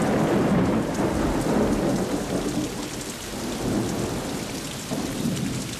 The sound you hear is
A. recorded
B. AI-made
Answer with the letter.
A